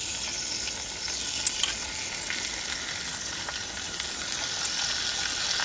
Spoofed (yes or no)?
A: no